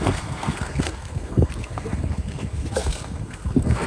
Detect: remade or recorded remade